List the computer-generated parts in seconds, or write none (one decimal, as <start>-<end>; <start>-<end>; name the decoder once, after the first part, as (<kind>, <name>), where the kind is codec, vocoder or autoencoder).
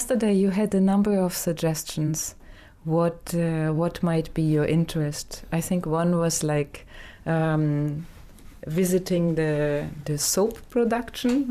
0.0-11.5 (vocoder, BigVGAN v2)